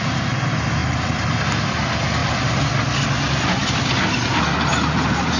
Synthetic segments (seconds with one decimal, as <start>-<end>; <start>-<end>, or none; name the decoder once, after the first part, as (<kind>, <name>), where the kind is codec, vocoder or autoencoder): 0.8-1.4 (vocoder, BigVGAN v2); 2.2-2.7; 4.7-5.4